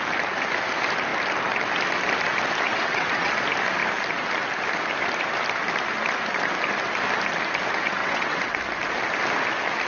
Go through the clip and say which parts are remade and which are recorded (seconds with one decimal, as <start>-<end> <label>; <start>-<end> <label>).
0.0-2.7 recorded; 2.7-3.3 remade; 3.3-8.0 recorded; 8.0-8.6 remade; 8.6-9.9 recorded